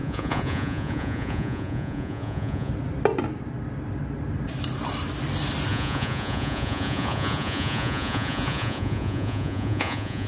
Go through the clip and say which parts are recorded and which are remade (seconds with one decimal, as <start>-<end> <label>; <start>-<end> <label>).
0.0-2.7 remade; 2.7-5.7 recorded; 5.7-10.3 remade